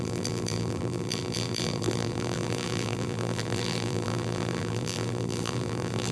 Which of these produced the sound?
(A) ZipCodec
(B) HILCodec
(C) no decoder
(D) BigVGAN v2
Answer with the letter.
D